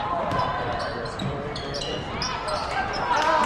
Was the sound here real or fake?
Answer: real